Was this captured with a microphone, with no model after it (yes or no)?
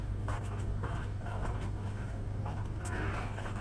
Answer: no